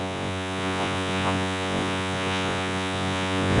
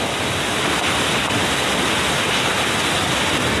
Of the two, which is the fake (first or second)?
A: first